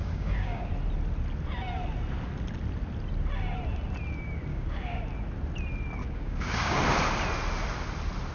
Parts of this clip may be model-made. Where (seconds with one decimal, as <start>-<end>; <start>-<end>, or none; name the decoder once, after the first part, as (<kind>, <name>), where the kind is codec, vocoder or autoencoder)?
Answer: 0.0-0.7 (codec, DAC); 4.5-5.0; 6.0-6.8